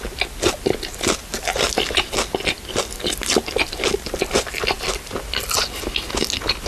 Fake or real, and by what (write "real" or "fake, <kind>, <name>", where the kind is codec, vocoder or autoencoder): real